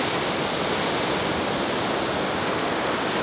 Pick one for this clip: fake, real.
real